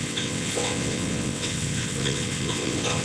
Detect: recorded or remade remade